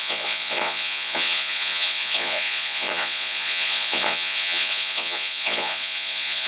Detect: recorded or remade remade